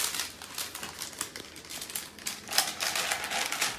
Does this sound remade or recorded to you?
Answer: recorded